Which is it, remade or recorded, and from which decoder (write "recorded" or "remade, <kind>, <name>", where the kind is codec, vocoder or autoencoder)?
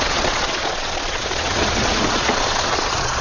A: remade, vocoder, Vocos